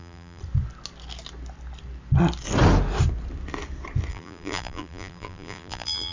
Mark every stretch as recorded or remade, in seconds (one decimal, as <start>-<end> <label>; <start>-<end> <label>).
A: 0.0-0.4 remade; 0.4-4.1 recorded; 4.1-6.1 remade